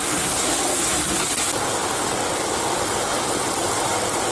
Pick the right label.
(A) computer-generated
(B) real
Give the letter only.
B